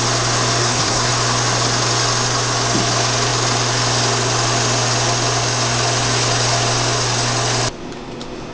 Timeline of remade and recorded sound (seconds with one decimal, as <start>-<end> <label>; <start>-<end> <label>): 0.0-0.6 recorded; 0.6-1.1 remade; 1.1-8.5 recorded